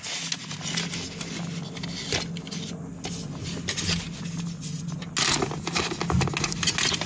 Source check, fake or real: real